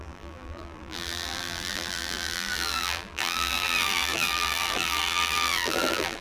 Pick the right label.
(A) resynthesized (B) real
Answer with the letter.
A